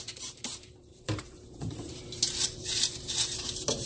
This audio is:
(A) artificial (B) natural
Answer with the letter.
A